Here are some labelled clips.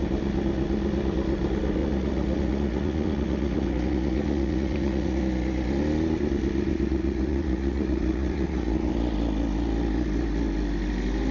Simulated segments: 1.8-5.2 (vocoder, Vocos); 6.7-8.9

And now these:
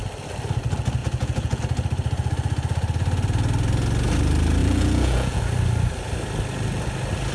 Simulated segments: 1.0-1.6 (vocoder, Vocos); 4.6-5.4

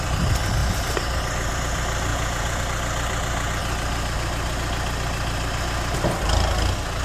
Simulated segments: 2.1-2.6 (vocoder, Vocos)